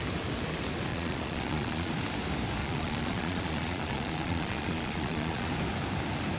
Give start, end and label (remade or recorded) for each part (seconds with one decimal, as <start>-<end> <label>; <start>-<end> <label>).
0.0-0.9 recorded; 0.9-1.9 remade; 1.9-2.6 recorded; 2.6-5.5 remade; 5.5-6.4 recorded